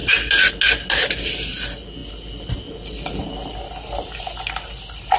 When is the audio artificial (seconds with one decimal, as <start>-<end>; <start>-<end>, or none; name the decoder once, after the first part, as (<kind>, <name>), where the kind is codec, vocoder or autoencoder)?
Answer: none